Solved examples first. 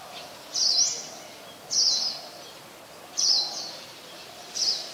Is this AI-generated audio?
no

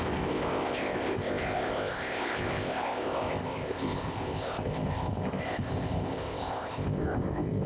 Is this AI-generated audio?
yes